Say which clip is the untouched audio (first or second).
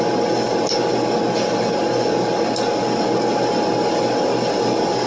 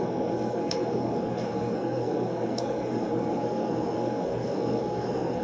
first